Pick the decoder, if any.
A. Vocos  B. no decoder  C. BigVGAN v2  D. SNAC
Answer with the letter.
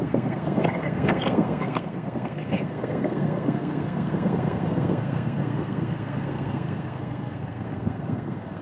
D